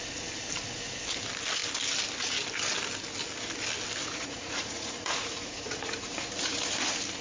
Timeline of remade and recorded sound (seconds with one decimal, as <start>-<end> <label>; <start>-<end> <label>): 0.0-4.0 recorded; 4.0-6.1 remade; 6.1-7.2 recorded